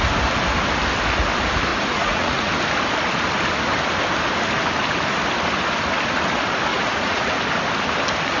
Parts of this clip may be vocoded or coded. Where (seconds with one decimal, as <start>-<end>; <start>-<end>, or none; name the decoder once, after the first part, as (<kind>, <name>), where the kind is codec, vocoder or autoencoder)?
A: 1.7-2.5 (vocoder, Vocos); 6.7-7.3